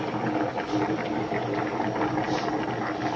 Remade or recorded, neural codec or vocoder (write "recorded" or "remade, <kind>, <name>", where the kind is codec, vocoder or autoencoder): recorded